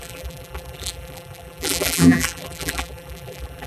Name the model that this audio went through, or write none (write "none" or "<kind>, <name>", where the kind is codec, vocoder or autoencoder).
vocoder, BigVGAN v2